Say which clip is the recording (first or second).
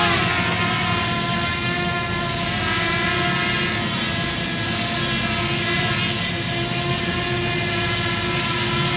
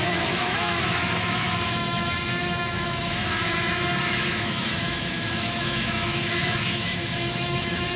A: first